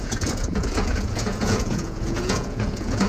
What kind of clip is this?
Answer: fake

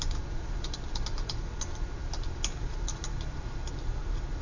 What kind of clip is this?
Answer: fake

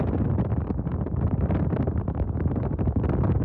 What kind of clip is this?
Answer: real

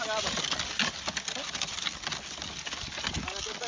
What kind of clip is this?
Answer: real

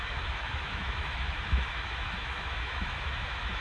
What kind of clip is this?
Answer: fake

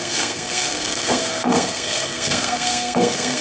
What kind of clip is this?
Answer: fake